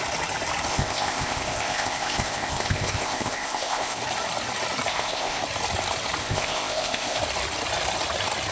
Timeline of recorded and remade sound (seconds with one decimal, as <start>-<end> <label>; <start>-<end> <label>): 0.0-0.7 recorded; 0.7-4.0 remade; 4.0-4.9 recorded; 4.9-5.4 remade; 5.4-6.2 recorded; 6.2-7.2 remade; 7.2-8.5 recorded